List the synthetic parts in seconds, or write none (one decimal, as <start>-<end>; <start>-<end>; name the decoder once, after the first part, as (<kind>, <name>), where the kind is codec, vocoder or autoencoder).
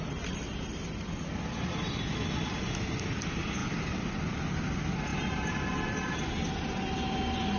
none